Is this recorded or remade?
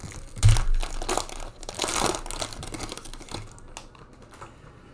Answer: recorded